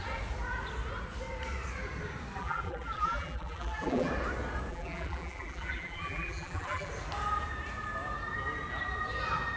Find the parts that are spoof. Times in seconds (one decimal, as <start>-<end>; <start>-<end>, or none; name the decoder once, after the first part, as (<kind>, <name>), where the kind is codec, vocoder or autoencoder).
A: 2.4-4.1 (vocoder, BigVGAN v2); 4.7-6.9